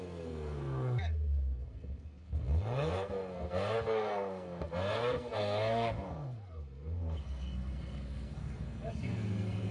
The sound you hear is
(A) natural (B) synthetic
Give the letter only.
B